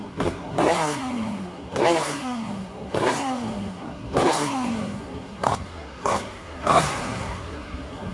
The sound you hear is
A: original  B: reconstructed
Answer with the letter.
B